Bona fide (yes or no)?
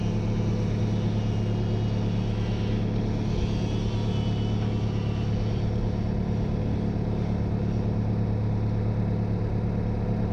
yes